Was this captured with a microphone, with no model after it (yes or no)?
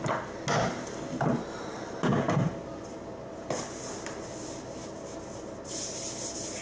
yes